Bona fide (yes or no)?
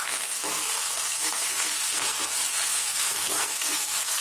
no